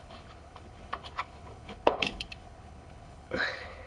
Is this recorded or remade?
remade